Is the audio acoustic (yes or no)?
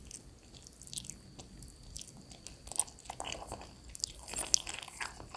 yes